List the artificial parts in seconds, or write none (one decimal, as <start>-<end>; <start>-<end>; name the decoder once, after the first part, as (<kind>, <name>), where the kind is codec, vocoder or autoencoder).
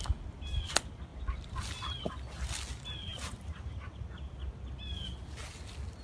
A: none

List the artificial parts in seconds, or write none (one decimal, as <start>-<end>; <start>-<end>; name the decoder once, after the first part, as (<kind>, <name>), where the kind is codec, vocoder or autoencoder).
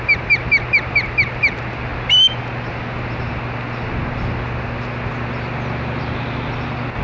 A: none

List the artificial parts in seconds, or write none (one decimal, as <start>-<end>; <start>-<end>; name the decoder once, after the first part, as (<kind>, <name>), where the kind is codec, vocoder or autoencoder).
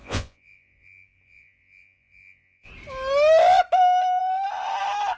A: 0.0-2.7 (vocoder, Vocos)